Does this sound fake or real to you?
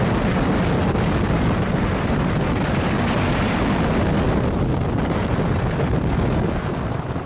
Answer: real